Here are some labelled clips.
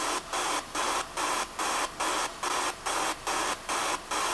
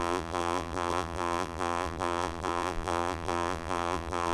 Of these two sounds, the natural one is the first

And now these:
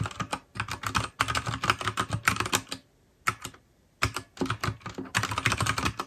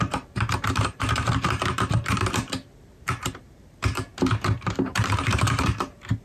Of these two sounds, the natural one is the first